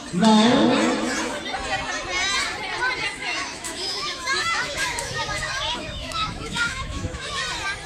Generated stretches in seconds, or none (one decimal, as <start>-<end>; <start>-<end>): 3.2-7.4